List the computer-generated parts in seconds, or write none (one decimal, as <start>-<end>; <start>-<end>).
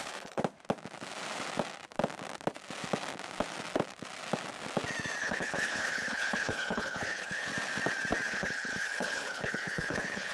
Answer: 0.0-0.4; 5.2-7.5; 8.3-10.3